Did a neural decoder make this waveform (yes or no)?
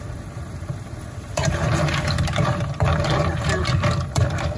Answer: yes